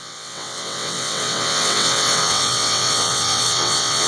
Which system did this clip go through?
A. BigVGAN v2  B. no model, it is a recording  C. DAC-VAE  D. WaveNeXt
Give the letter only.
D